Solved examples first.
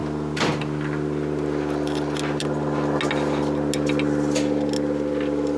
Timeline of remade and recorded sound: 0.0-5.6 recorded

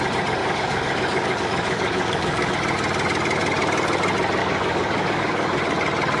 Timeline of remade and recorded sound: 0.0-0.4 recorded; 0.4-2.5 remade; 2.5-4.4 recorded; 4.4-5.6 remade; 5.6-6.2 recorded

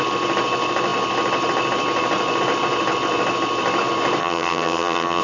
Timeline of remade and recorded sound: 0.0-4.2 recorded; 4.2-5.2 remade

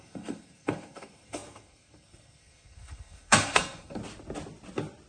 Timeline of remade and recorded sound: 0.0-4.0 remade; 4.0-5.1 recorded